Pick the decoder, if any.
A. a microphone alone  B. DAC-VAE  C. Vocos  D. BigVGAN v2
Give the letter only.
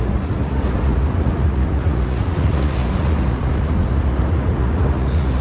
C